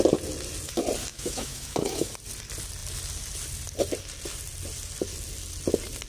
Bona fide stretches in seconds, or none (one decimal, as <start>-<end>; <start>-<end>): 0.0-1.1; 2.1-6.1